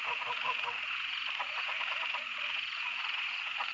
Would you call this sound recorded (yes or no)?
no